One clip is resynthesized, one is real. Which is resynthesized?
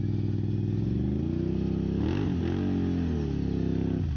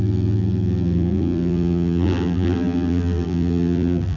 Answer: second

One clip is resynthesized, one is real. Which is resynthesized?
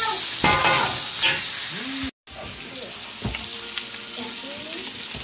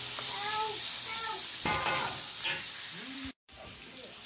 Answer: second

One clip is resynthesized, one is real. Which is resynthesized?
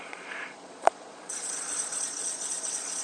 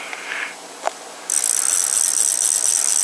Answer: first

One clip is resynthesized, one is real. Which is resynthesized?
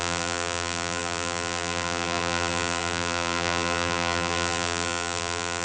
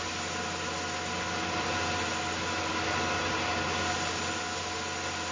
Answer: first